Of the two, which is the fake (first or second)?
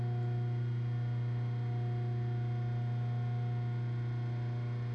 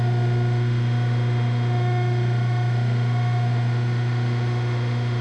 second